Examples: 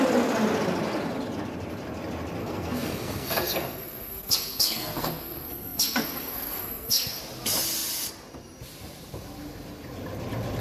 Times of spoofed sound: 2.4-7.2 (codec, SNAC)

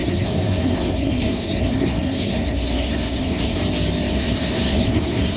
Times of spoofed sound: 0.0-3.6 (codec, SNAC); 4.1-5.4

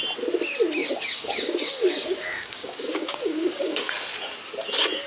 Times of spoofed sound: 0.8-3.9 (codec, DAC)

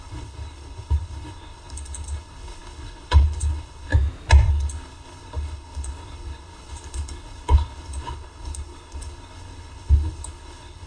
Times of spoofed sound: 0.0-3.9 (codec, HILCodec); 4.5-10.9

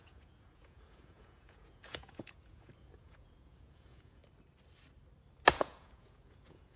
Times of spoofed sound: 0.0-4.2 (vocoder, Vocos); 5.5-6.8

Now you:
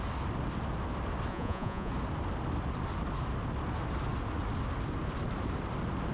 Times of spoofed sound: 1.3-1.9 (vocoder, Vocos)

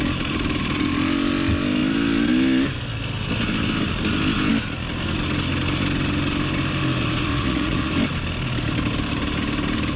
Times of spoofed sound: 7.3-7.9 (vocoder, Vocos)

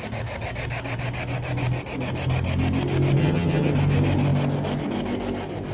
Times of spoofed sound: 3.2-3.7 (vocoder, HiFi-GAN)